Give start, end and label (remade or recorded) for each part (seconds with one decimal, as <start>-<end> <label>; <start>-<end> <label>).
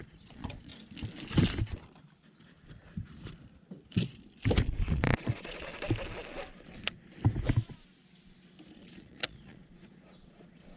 0.0-0.7 remade; 0.7-4.6 recorded; 4.6-5.7 remade; 5.7-8.7 recorded; 8.7-10.8 remade